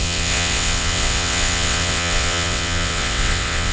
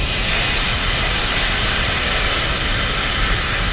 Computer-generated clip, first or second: first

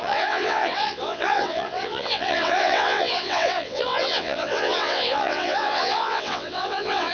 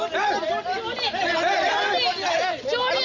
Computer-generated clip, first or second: first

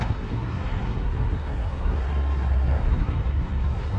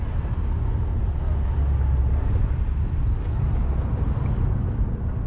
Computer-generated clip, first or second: first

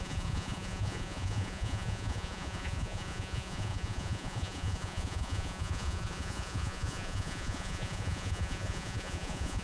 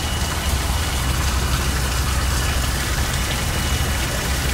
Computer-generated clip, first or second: first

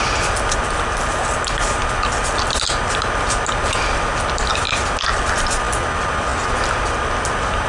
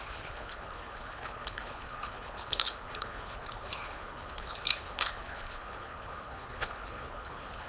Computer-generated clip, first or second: second